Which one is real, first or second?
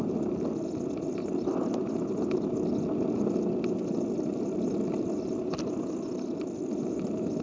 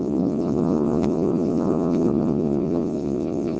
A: first